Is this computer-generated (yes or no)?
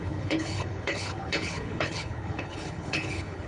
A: yes